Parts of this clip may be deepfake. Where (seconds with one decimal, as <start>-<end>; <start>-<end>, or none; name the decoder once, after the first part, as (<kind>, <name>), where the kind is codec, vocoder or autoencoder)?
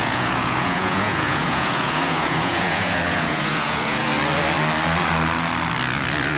0.0-4.1 (vocoder, Vocos)